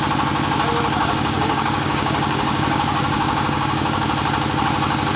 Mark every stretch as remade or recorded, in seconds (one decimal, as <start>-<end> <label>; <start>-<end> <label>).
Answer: 0.0-1.0 recorded; 1.0-4.1 remade; 4.1-5.2 recorded